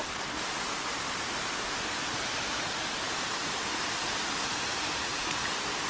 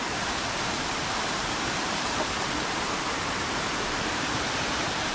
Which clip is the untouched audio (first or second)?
first